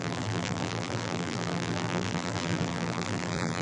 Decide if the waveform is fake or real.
fake